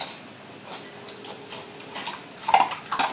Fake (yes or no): no